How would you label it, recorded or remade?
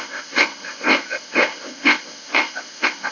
remade